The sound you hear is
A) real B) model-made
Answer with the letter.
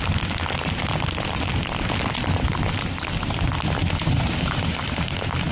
A